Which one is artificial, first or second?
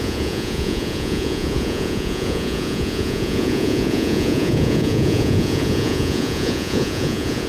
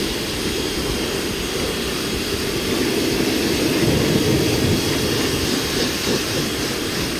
first